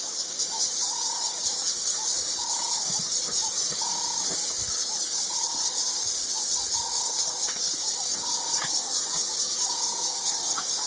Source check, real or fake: fake